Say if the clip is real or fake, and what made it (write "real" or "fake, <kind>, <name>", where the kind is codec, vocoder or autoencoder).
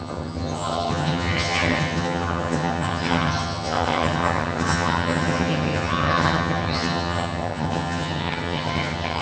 fake, vocoder, HiFi-GAN